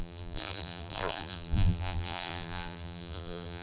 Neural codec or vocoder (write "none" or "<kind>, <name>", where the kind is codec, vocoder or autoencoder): vocoder, BigVGAN v2